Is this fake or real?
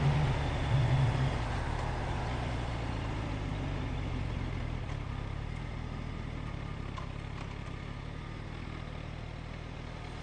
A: real